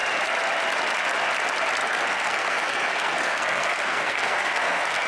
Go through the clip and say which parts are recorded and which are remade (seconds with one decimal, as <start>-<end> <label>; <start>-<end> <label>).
0.0-1.8 recorded; 1.8-5.1 remade

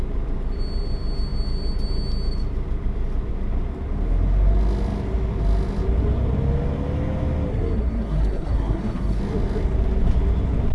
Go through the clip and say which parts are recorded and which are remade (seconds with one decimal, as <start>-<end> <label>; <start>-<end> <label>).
0.0-7.5 recorded; 7.5-9.2 remade; 9.2-10.7 recorded